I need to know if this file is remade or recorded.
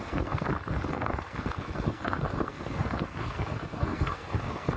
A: remade